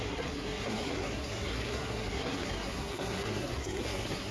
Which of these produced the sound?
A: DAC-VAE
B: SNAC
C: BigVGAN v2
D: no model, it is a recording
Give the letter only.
B